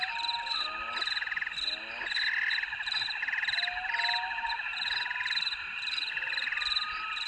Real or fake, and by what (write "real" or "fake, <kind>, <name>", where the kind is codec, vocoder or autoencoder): real